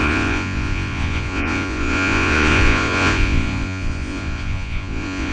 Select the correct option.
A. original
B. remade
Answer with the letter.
B